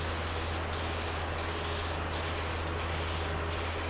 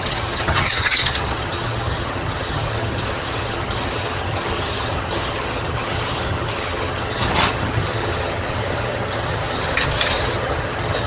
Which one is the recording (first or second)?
first